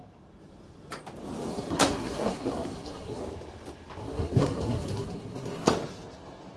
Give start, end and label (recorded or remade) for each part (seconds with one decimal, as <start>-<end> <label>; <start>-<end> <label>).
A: 0.0-1.5 recorded; 1.5-3.2 remade; 3.2-4.0 recorded; 4.0-5.7 remade; 5.7-6.6 recorded